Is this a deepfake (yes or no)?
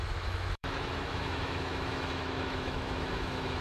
yes